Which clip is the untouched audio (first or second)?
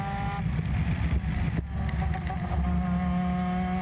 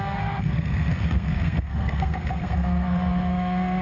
first